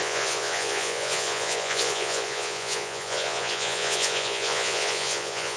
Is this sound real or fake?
fake